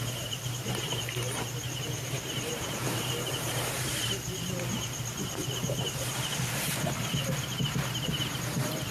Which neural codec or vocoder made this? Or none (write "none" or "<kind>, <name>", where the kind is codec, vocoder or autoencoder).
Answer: vocoder, BigVGAN v2